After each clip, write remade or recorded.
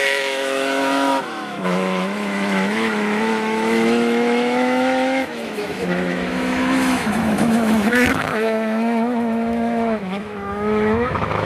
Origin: remade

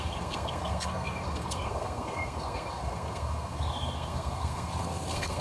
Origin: remade